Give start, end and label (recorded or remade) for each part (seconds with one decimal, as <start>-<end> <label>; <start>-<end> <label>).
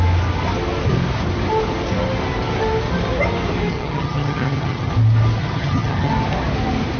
0.0-3.7 recorded; 3.7-4.9 remade; 4.9-5.4 recorded; 5.4-6.1 remade; 6.1-7.0 recorded